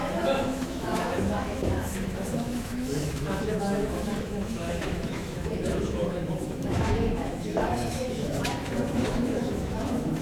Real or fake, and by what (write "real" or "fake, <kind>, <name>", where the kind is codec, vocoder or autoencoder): fake, autoencoder, DAC-VAE